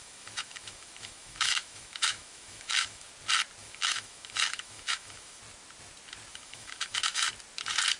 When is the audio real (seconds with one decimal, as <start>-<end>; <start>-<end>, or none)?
3.1-3.6; 5.4-6.3; 7.3-8.0